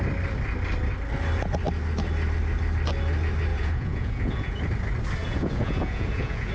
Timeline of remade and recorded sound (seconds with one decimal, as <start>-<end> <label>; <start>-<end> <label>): 0.0-3.5 recorded; 3.5-4.6 remade; 4.6-5.2 recorded; 5.2-6.5 remade